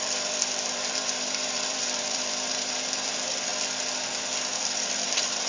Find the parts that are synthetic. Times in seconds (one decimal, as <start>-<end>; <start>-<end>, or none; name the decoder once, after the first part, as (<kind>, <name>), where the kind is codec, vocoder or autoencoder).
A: 0.0-3.5 (vocoder, BigVGAN v2); 4.6-5.5